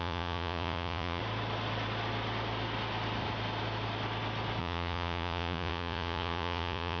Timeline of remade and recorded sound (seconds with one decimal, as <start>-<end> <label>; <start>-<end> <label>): 0.0-1.2 remade; 1.2-4.6 recorded; 4.6-7.0 remade